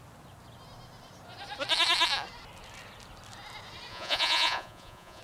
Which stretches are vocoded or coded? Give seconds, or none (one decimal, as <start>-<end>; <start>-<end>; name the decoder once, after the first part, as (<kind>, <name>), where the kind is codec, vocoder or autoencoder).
3.9-5.2 (vocoder, Vocos)